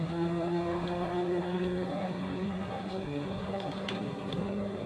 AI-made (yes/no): yes